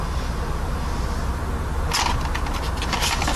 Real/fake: real